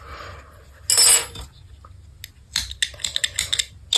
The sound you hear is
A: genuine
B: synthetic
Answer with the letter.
A